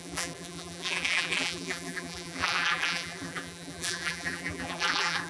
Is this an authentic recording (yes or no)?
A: no